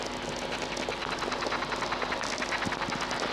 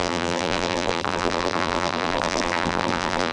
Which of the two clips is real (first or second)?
first